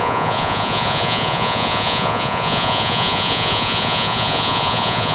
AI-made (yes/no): yes